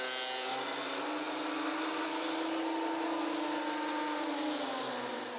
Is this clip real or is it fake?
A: real